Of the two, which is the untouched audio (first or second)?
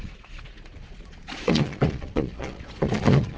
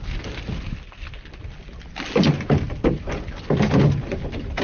second